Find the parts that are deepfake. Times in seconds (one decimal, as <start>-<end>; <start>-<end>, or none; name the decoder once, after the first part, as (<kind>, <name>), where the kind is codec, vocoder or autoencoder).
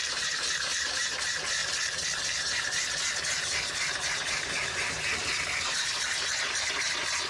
0.0-1.6 (vocoder, BigVGAN v2); 2.4-7.3